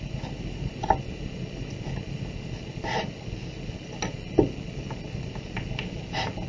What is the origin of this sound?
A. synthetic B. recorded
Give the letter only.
B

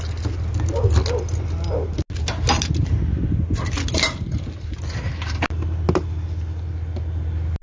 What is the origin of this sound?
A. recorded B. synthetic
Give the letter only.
A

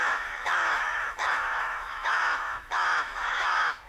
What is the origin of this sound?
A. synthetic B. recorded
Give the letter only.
A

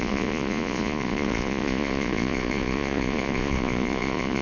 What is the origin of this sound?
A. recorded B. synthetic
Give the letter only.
B